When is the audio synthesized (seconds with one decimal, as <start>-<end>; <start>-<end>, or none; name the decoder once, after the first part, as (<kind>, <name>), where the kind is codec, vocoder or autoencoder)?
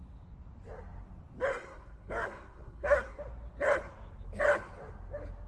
1.5-3.2 (codec, SNAC)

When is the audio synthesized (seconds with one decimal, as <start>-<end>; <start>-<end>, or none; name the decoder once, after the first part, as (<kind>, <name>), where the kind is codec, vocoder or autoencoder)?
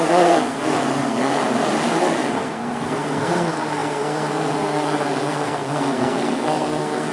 0.0-1.4 (codec, SNAC); 2.0-7.1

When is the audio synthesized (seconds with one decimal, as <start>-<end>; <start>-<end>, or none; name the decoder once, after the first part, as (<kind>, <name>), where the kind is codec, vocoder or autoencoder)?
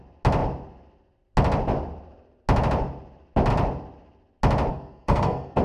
4.7-5.6 (codec, SNAC)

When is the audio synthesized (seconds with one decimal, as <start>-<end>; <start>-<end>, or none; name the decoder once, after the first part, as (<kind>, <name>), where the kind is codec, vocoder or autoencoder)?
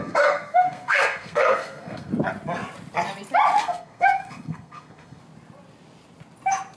0.0-2.1 (codec, SNAC); 3.6-5.2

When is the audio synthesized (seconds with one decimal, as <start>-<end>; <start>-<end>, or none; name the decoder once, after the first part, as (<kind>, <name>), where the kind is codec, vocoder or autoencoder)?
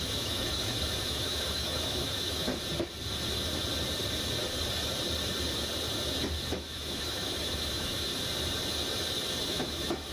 0.0-2.5 (autoencoder, DAC-VAE); 6.5-8.1; 9.5-10.1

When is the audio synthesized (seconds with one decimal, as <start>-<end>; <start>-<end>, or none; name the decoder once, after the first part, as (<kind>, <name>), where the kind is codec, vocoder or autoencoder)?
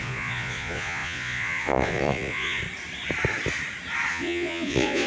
0.0-2.6 (vocoder, Vocos); 4.1-5.1